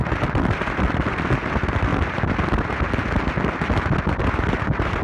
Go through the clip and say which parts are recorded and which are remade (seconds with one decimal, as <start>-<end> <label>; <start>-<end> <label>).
0.0-5.0 recorded